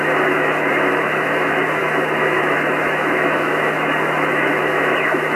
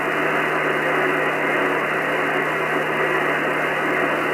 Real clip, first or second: second